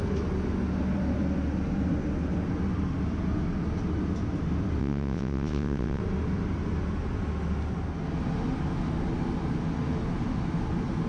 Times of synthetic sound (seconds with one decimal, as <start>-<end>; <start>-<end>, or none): 4.8-6.0